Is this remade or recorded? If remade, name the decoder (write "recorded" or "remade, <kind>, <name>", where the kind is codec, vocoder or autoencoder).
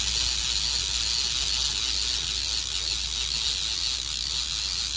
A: recorded